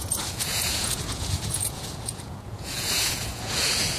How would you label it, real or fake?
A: fake